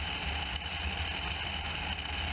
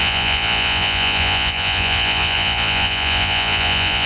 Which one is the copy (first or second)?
second